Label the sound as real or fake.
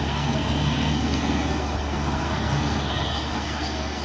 fake